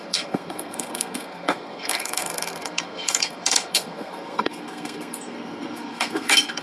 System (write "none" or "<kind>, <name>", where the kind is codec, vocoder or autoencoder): codec, SNAC